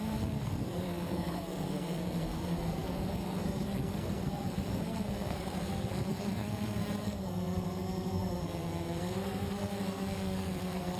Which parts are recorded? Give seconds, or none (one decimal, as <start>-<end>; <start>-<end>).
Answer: none